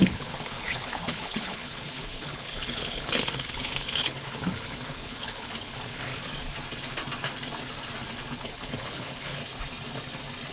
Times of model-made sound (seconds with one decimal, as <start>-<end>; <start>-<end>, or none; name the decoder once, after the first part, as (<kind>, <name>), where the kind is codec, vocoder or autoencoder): 0.0-6.1 (codec, HILCodec); 8.4-9.4